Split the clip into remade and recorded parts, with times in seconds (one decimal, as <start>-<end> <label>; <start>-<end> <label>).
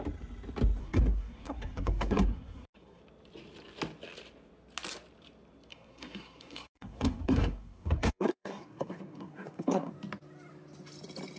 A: 0.0-0.8 recorded; 0.8-3.0 remade; 3.0-5.7 recorded; 5.7-9.9 remade; 9.9-11.4 recorded